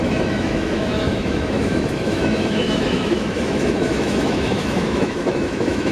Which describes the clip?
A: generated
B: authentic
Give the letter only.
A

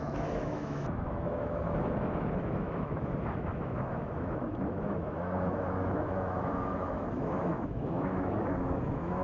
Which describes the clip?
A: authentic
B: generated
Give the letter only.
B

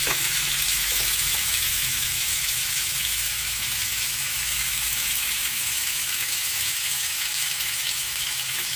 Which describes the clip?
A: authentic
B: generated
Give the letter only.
B